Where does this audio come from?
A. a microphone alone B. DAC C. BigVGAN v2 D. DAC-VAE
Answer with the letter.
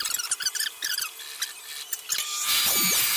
A